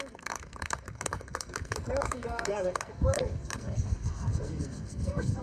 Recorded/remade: remade